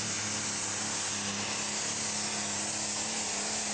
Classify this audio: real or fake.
real